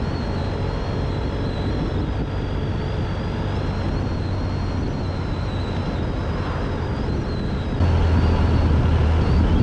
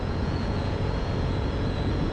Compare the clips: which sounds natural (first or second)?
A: first